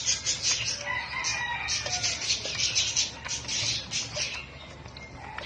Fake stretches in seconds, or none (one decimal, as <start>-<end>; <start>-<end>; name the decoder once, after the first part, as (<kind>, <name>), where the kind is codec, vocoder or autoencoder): none